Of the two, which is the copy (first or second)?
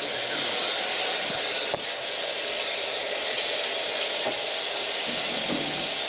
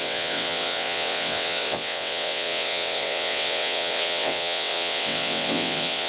second